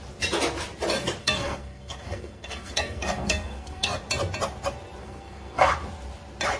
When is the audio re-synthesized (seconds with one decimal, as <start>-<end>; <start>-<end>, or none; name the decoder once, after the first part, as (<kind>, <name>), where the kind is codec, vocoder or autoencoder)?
1.2-4.0 (codec, SNAC); 5.0-5.7